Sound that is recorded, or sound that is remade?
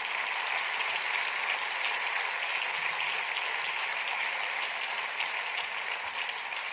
recorded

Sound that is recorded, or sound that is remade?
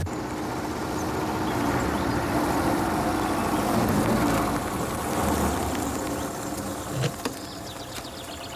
recorded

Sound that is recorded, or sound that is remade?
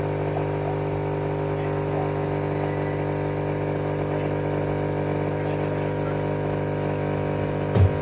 recorded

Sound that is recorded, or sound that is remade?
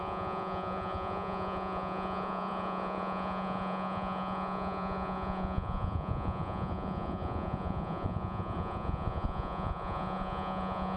remade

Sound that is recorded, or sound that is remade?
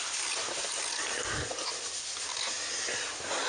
recorded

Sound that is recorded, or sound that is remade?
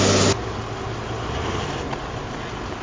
recorded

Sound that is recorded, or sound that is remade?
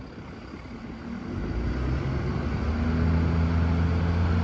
recorded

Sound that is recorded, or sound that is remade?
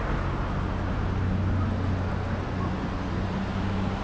recorded